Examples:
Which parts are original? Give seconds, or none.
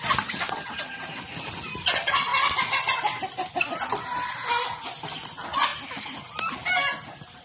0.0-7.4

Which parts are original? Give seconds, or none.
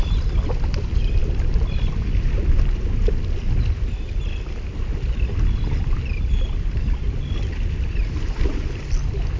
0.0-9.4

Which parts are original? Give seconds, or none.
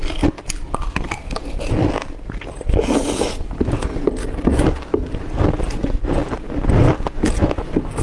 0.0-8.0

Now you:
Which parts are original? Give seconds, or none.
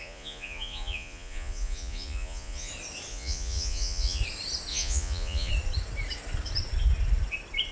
2.7-3.1; 4.2-4.7; 5.5-7.7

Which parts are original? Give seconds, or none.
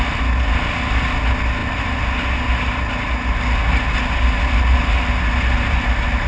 0.0-6.3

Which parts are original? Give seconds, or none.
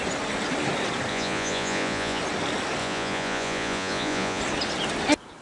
0.0-1.1; 2.2-2.8; 4.4-5.4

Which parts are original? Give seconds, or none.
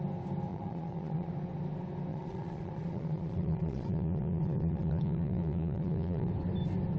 0.0-0.5; 1.3-2.1; 6.3-7.0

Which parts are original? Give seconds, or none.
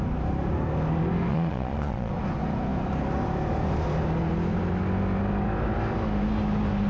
0.0-1.3; 2.1-6.9